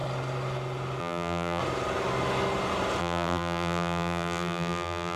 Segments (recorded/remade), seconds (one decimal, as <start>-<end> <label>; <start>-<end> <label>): 0.0-1.0 recorded; 1.0-1.6 remade; 1.6-3.0 recorded; 3.0-5.2 remade